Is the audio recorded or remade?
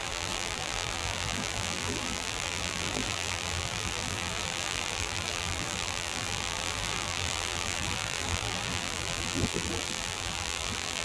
remade